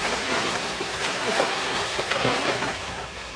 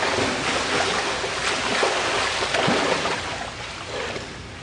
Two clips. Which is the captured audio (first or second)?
second